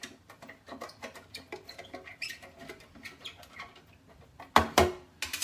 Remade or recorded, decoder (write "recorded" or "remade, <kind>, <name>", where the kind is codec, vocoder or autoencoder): recorded